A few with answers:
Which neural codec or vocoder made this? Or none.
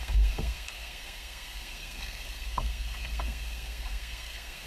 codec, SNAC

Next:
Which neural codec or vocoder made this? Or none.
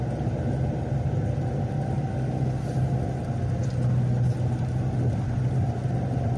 none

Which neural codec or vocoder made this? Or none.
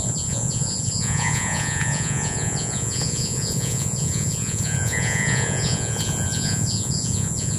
vocoder, Vocos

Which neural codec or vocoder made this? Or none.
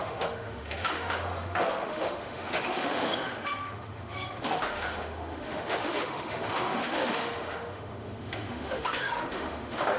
autoencoder, DAC-VAE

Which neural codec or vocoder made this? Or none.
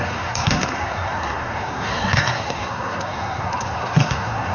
codec, SNAC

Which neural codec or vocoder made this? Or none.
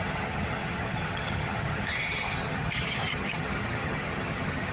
vocoder, HiFi-GAN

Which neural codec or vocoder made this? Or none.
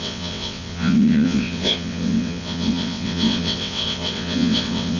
vocoder, WaveNeXt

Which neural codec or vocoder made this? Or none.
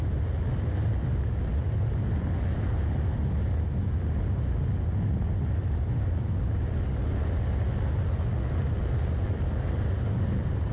none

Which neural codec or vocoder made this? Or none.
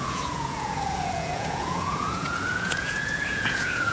vocoder, Vocos